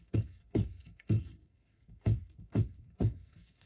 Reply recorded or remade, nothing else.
remade